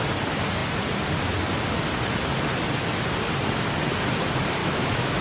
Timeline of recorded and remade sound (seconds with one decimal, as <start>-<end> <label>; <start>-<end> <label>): 0.0-4.6 recorded; 4.6-5.2 remade